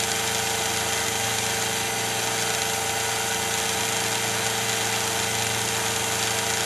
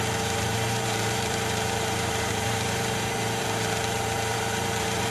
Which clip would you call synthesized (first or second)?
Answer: second